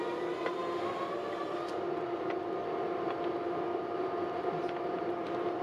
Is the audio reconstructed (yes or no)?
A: no